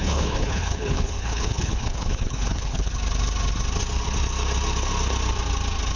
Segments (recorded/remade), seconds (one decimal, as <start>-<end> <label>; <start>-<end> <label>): 0.0-2.9 remade; 2.9-6.0 recorded